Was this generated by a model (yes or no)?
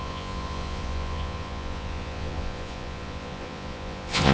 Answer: yes